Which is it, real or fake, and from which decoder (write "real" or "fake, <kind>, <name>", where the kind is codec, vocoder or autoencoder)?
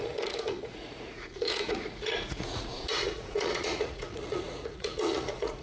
fake, vocoder, Vocos